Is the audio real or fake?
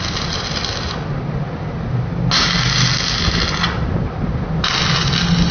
real